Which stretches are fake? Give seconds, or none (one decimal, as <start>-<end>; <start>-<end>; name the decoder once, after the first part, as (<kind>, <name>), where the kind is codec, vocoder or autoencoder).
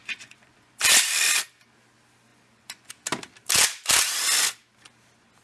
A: 0.0-0.8 (vocoder, Vocos); 2.3-2.9